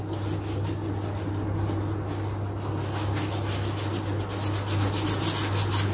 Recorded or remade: recorded